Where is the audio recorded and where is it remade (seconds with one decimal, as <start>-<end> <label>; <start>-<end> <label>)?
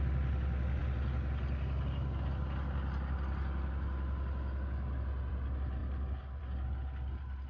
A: 0.0-7.5 recorded